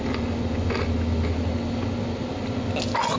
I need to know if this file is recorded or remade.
recorded